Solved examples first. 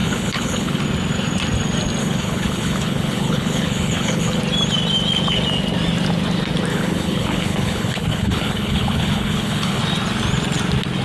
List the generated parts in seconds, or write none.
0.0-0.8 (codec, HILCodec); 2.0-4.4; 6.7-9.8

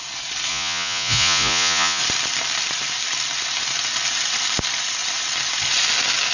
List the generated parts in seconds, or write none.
0.5-2.0 (vocoder, Vocos)

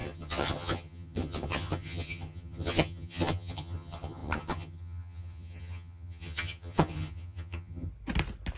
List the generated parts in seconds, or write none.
0.0-7.9 (vocoder, HiFi-GAN)

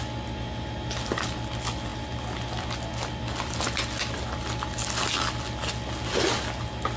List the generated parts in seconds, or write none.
none

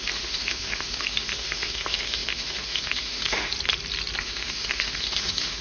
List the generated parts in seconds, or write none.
0.0-3.5 (autoencoder, DAC-VAE); 4.2-5.6

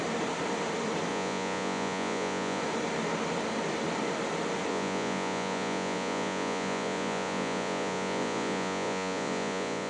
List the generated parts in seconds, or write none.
1.1-2.6 (vocoder, Vocos); 4.7-9.9